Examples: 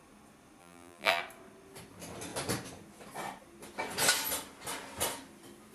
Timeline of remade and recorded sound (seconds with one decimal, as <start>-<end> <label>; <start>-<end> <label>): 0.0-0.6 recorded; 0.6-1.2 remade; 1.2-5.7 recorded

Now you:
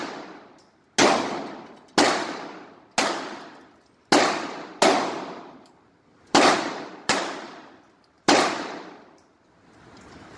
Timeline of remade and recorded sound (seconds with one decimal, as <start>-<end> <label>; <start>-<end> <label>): 0.0-6.1 recorded; 6.1-9.4 remade; 9.4-10.4 recorded

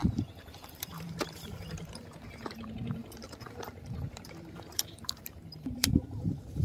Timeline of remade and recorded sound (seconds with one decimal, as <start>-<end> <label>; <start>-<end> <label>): 0.0-0.6 recorded; 0.6-6.6 remade